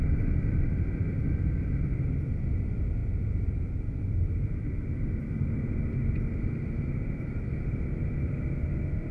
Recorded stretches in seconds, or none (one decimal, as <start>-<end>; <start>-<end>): 0.0-3.0; 4.9-9.1